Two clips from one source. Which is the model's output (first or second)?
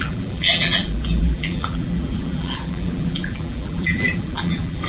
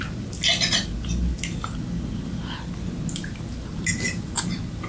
first